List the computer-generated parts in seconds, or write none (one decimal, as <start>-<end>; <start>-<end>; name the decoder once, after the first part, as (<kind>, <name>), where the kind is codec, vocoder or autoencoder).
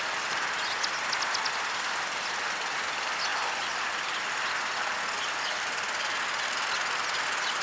none